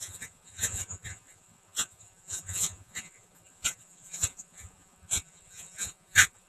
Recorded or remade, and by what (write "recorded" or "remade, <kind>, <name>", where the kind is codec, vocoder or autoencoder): remade, vocoder, Vocos